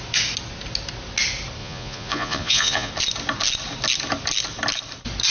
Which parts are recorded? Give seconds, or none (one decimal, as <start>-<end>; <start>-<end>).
0.0-1.6; 2.9-5.3